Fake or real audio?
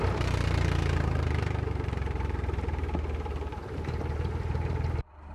fake